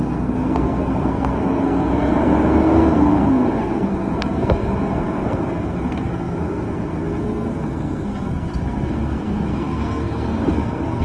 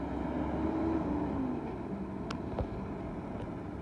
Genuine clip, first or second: second